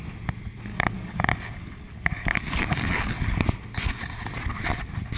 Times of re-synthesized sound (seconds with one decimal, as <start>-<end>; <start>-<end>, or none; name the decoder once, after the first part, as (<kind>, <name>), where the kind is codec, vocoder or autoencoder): 0.7-3.5 (codec, DAC)